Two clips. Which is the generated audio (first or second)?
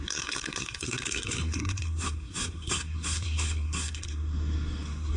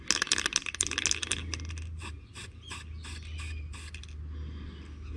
first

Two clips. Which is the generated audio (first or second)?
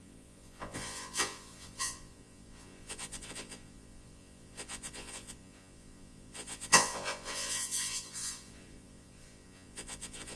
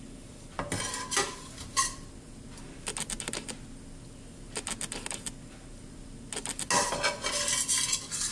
first